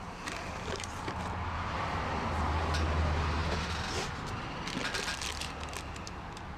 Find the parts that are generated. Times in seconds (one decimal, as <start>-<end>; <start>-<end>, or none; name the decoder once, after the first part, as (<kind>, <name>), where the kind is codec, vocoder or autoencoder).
none